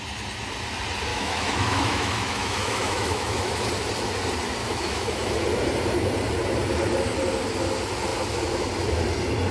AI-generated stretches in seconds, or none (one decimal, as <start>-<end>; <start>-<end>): 1.1-3.7; 4.6-5.3